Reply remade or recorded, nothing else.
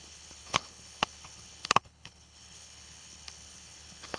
remade